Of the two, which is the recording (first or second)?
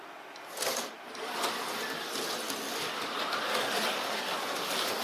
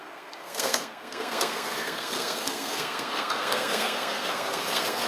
first